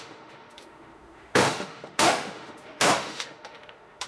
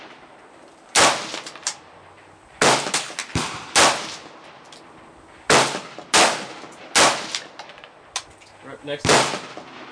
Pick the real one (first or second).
second